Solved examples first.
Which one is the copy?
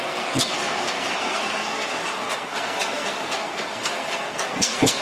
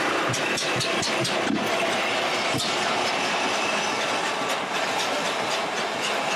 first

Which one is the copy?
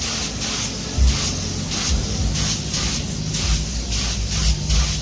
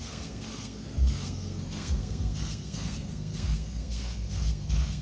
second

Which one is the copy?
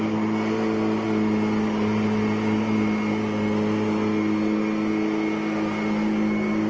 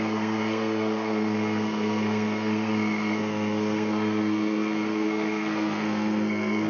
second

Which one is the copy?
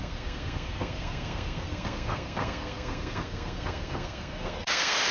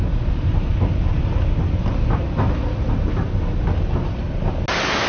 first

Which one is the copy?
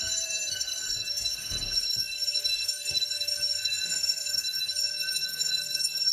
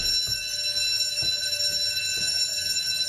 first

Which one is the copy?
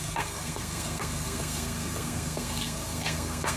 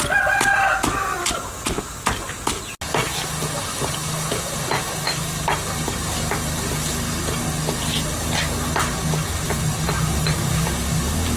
first